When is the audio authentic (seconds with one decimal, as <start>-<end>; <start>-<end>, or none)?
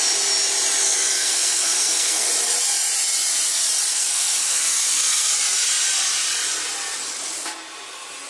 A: 0.0-0.8; 2.3-3.9; 5.3-8.3